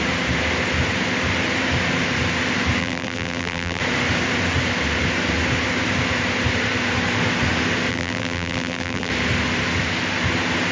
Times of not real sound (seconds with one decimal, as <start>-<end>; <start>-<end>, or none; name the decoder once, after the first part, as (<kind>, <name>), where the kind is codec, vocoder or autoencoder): 2.8-3.8 (vocoder, BigVGAN v2); 7.9-9.1

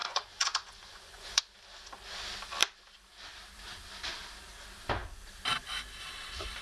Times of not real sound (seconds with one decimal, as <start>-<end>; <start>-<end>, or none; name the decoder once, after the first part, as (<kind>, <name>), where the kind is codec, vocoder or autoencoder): 0.0-1.4 (vocoder, Vocos)

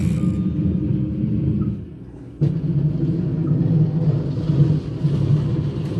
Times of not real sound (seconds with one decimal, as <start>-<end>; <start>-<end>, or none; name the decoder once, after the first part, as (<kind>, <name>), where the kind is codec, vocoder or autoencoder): none

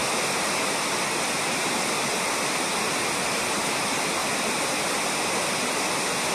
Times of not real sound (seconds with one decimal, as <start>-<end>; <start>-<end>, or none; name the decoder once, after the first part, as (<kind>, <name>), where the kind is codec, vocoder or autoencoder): none

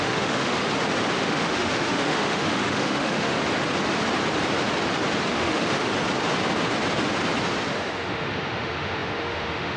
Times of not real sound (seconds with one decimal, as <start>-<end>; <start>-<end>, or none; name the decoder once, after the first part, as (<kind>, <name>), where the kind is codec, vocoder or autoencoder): 0.0-0.6 (autoencoder, DAC-VAE); 1.2-3.3; 5.3-5.9; 7.7-9.8

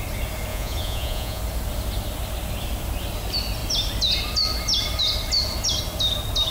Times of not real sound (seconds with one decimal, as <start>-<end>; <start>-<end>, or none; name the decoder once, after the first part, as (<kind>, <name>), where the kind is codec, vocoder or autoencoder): 0.5-1.4 (vocoder, Vocos)

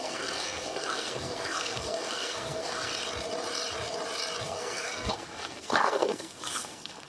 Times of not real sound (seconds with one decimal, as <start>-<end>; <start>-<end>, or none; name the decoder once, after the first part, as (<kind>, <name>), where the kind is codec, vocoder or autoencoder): 0.0-2.9 (codec, SNAC); 4.4-7.1